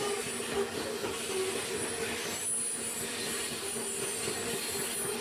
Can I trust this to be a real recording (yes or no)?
yes